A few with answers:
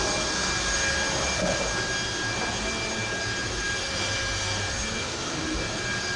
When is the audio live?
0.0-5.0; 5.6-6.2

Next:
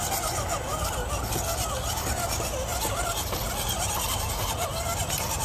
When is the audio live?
0.0-5.4